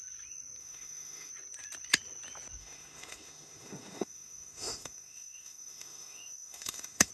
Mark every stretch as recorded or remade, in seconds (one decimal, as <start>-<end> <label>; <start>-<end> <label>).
0.0-0.6 recorded; 0.6-1.3 remade; 1.3-2.6 recorded; 2.6-7.1 remade